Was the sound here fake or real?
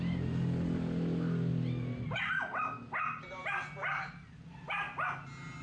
real